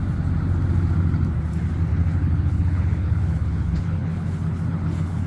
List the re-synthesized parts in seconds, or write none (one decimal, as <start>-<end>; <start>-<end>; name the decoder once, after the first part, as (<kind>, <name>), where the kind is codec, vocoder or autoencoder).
1.9-5.3 (codec, HILCodec)